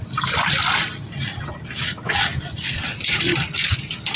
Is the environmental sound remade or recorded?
recorded